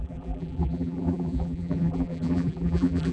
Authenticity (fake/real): fake